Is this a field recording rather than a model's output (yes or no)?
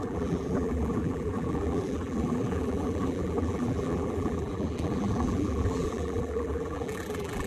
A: no